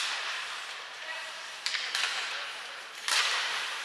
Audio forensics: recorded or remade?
remade